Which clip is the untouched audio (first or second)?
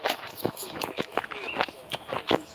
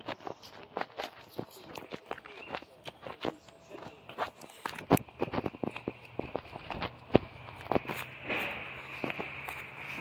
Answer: second